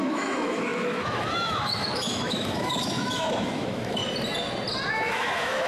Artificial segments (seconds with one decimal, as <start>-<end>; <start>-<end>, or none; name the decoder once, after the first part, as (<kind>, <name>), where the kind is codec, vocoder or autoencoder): 0.0-4.0 (autoencoder, DAC-VAE); 4.9-5.7